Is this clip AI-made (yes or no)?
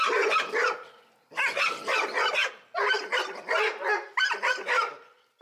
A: no